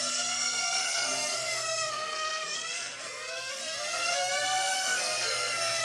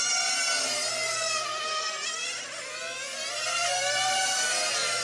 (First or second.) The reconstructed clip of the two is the first